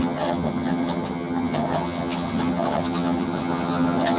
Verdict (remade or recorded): remade